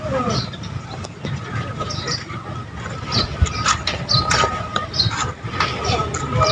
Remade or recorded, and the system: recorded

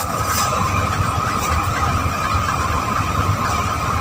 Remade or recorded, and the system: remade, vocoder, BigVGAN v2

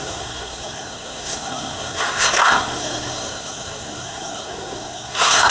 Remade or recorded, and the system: remade, codec, SNAC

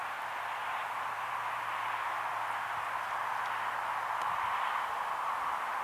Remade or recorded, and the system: recorded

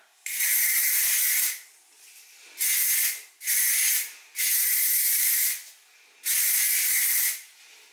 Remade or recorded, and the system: recorded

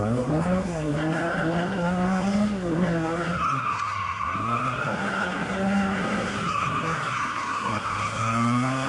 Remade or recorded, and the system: remade, codec, SNAC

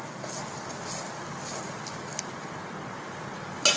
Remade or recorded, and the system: recorded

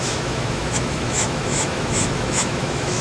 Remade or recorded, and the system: remade, autoencoder, DAC-VAE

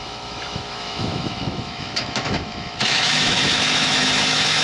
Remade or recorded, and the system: remade, autoencoder, DAC-VAE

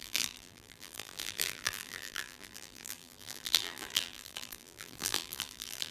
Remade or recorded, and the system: remade, vocoder, BigVGAN v2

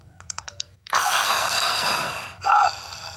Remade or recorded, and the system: remade, codec, SNAC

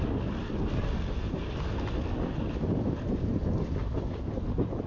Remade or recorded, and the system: recorded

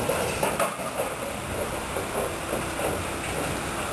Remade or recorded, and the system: recorded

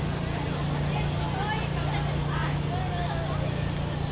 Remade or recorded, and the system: recorded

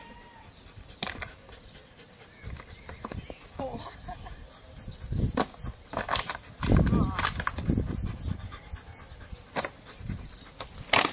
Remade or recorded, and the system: recorded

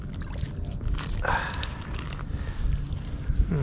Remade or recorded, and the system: recorded